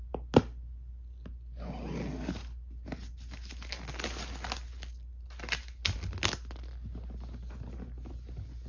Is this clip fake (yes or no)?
no